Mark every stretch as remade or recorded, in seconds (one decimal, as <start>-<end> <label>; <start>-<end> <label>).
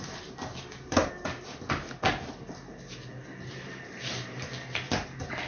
0.0-5.5 recorded